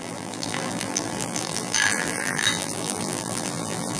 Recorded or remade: remade